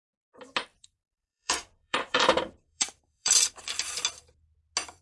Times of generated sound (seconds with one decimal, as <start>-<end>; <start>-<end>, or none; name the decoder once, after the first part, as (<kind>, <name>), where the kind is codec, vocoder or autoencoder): 0.7-3.6 (vocoder, BigVGAN v2)